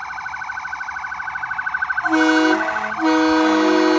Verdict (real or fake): real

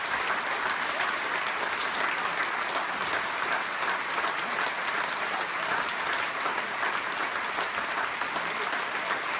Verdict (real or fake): real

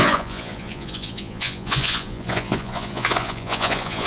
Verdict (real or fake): fake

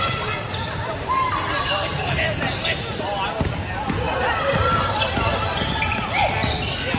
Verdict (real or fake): real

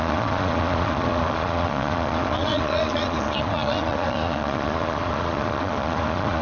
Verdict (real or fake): fake